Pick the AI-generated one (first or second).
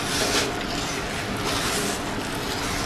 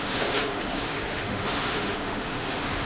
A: second